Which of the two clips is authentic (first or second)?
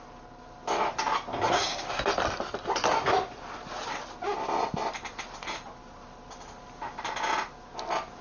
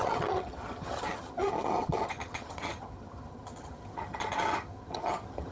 first